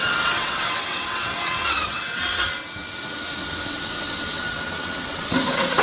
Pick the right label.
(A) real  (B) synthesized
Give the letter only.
B